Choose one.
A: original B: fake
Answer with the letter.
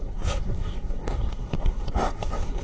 B